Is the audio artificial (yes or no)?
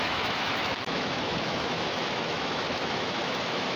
yes